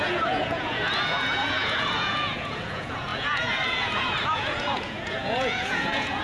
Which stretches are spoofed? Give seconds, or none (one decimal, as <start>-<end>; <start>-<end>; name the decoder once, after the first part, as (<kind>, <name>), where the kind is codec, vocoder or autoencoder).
0.0-6.2 (vocoder, Vocos)